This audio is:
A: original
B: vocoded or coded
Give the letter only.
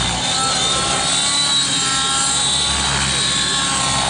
A